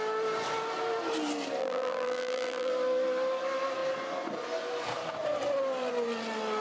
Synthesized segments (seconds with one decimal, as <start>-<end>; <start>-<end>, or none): 1.6-2.7

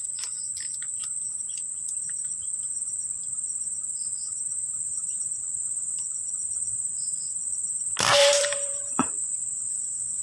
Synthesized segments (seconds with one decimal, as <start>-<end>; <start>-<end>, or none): 8.2-9.2